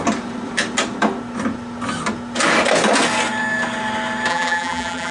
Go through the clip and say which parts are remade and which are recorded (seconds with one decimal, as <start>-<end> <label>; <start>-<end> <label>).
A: 0.0-4.3 recorded; 4.3-5.1 remade